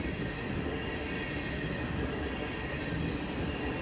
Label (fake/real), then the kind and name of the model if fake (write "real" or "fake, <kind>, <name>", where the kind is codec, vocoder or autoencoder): real